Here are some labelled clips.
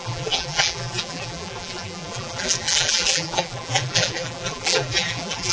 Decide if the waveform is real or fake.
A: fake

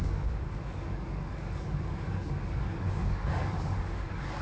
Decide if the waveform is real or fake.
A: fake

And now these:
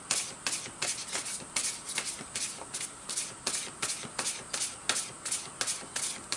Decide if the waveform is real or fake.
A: real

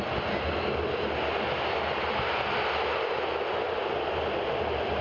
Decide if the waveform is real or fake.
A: real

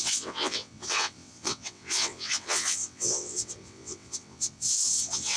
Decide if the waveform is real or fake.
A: fake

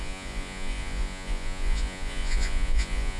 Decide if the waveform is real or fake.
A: fake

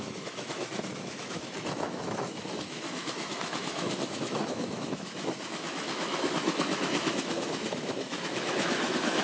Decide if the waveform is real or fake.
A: fake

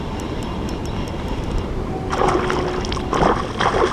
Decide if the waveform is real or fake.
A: real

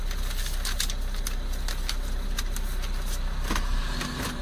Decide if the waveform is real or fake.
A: real